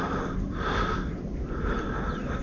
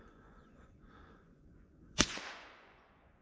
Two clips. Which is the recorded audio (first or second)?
first